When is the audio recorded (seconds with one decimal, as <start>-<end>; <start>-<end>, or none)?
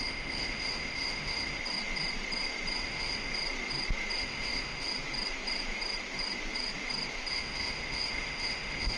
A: 1.6-2.8; 3.3-4.2; 4.9-7.3